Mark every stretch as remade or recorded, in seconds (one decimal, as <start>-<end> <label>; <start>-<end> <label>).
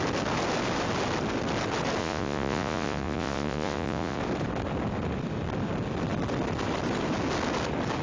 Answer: 0.0-2.0 recorded; 2.0-4.2 remade; 4.2-8.0 recorded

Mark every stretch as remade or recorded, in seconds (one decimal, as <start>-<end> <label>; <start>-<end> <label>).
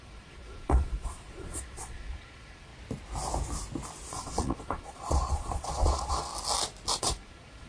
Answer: 0.0-2.7 remade; 2.7-4.1 recorded; 4.1-6.3 remade; 6.3-7.0 recorded; 7.0-7.7 remade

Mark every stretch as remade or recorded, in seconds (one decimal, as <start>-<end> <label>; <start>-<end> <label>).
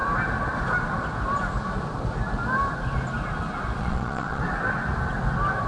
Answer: 0.0-3.8 recorded; 3.8-4.4 remade; 4.4-5.7 recorded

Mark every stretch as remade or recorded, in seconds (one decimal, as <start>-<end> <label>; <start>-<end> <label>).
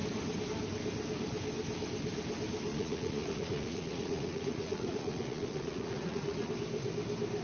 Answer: 0.0-2.7 recorded; 2.7-6.5 remade; 6.5-7.4 recorded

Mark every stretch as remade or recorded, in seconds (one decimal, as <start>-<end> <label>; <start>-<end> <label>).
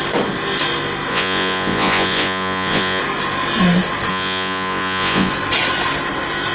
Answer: 0.0-1.1 recorded; 1.1-3.0 remade; 3.0-4.1 recorded; 4.1-5.3 remade; 5.3-6.5 recorded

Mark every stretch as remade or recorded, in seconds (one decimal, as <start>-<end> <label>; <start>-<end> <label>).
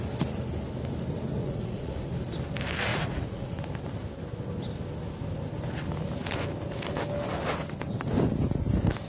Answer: 0.0-1.4 recorded; 1.4-2.1 remade; 2.1-2.9 recorded; 2.9-3.6 remade; 3.6-9.1 recorded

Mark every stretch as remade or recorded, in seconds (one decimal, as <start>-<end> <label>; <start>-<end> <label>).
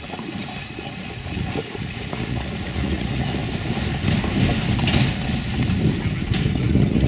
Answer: 0.0-3.4 remade; 3.4-6.6 recorded; 6.6-7.1 remade